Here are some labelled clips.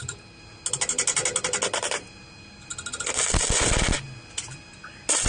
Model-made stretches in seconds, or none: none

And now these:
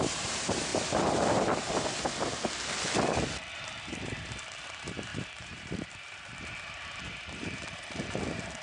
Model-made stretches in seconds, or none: 0.0-0.7 (vocoder, BigVGAN v2); 3.5-8.6

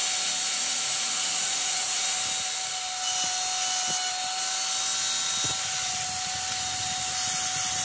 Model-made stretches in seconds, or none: 0.0-2.2 (vocoder, Vocos)

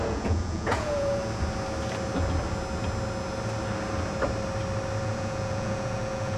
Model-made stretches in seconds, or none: 0.0-1.2 (vocoder, Vocos); 5.0-6.4

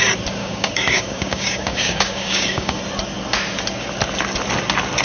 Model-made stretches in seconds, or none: 0.4-2.8 (codec, DAC)

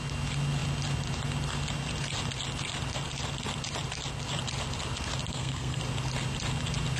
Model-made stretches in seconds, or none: 5.3-5.8 (codec, SNAC)

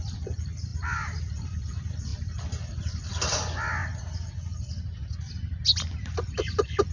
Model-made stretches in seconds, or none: none